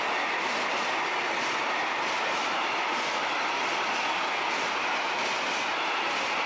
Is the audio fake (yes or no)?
no